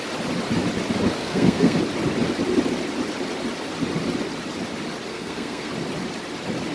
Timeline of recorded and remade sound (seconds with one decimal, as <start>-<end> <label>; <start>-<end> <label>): 0.0-1.2 recorded; 1.2-1.8 remade; 1.8-5.1 recorded; 5.1-5.7 remade; 5.7-6.7 recorded